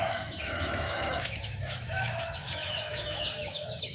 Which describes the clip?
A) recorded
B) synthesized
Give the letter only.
B